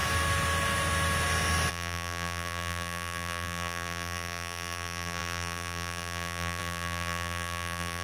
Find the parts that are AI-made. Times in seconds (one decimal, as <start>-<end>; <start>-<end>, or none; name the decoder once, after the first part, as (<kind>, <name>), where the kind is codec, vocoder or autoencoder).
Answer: 1.7-8.0 (vocoder, BigVGAN v2)